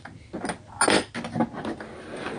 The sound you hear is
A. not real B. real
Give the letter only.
B